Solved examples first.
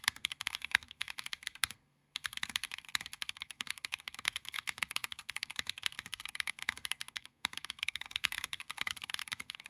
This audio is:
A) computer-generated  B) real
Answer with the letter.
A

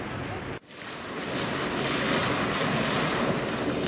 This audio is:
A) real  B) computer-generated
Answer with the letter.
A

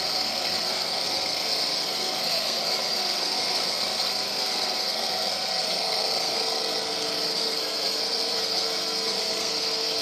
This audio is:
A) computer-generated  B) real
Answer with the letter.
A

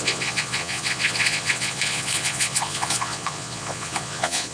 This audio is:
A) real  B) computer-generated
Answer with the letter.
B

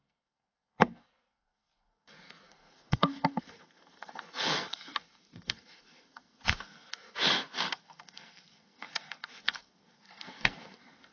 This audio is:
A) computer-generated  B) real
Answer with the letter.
A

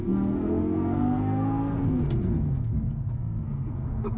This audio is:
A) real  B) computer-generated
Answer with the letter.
B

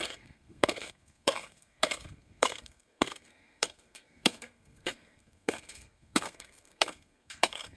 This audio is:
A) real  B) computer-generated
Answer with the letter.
B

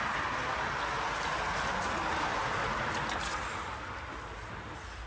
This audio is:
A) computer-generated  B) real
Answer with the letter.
B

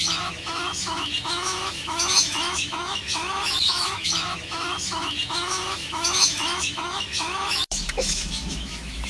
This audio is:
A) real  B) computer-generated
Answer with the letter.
B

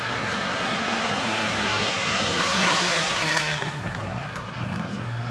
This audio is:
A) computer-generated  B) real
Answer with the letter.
A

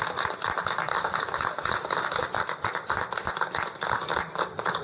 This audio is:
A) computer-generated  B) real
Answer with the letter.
B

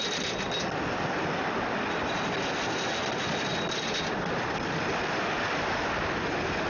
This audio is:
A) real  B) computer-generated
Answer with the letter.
A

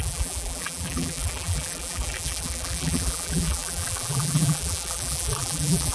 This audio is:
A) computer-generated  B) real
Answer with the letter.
A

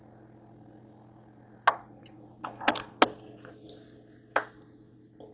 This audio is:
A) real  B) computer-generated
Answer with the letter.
A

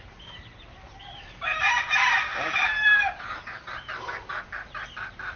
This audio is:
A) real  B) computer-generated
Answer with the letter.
B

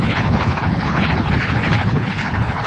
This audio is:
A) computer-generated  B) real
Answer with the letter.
A